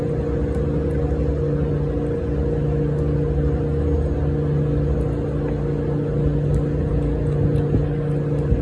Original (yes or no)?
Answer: yes